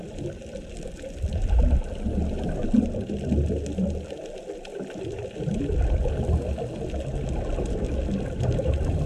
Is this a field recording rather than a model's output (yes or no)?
yes